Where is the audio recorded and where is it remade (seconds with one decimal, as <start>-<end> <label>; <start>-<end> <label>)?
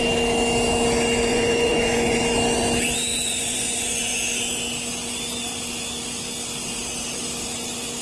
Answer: 0.0-1.3 recorded; 1.3-2.2 remade; 2.2-3.1 recorded; 3.1-4.2 remade; 4.2-8.0 recorded